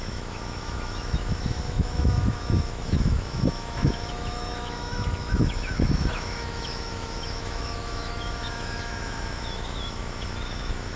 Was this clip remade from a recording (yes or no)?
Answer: yes